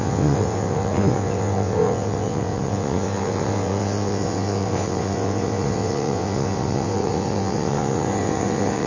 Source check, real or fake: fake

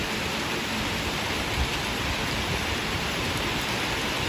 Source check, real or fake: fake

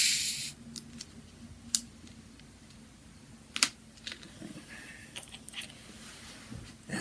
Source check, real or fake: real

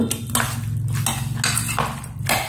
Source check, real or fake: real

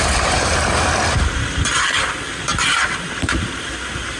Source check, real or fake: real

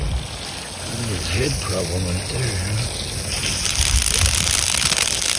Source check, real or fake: real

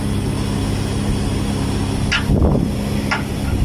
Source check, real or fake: real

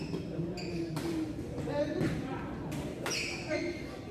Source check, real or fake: real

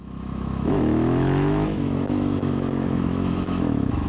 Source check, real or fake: fake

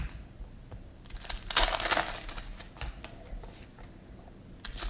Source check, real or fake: real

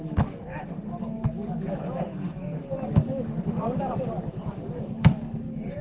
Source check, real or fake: fake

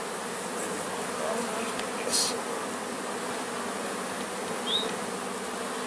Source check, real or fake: real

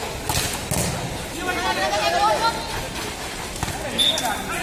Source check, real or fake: real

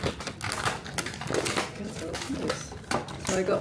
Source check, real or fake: real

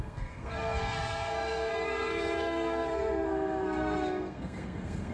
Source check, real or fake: fake